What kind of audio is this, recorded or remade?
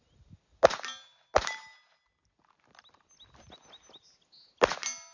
recorded